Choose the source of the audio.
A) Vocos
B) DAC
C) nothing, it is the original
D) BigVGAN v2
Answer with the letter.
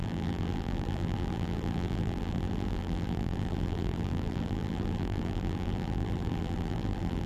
D